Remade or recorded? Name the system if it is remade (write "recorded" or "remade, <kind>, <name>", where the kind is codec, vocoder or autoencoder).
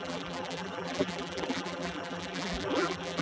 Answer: remade, vocoder, BigVGAN v2